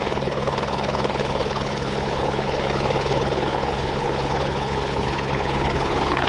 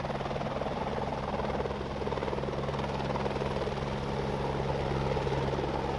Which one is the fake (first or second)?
first